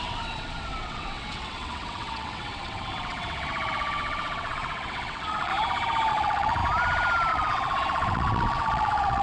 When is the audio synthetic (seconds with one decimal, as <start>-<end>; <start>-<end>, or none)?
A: 0.0-5.5; 6.1-6.6; 7.3-9.2